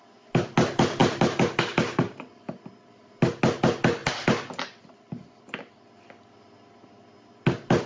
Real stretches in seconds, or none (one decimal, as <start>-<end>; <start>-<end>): 0.0-1.0; 2.6-4.0; 5.7-7.9